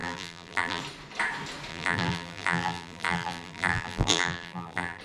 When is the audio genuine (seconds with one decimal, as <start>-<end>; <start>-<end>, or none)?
0.8-1.7